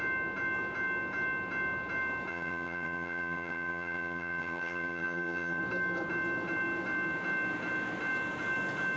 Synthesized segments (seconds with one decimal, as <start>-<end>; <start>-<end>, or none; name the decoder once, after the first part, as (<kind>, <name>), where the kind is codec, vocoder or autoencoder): 2.3-5.6 (vocoder, HiFi-GAN)